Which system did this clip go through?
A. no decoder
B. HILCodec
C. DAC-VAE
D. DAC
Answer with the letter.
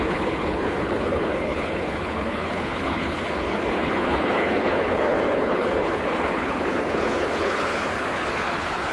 B